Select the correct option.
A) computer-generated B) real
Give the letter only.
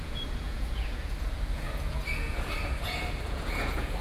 A